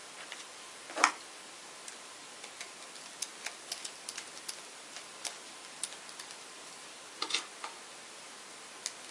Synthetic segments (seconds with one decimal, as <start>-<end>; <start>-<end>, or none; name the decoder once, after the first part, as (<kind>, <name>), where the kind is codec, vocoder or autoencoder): 0.0-1.1 (vocoder, BigVGAN v2); 5.6-7.6